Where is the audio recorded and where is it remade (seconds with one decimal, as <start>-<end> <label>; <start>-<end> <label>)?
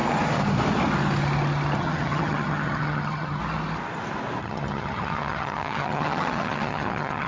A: 0.0-1.8 recorded; 1.8-3.4 remade; 3.4-4.4 recorded; 4.4-7.3 remade